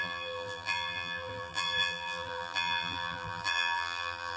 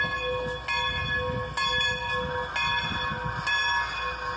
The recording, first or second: second